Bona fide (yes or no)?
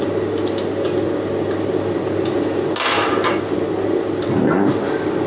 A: yes